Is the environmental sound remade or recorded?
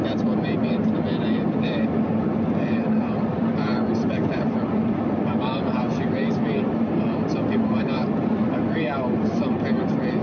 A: remade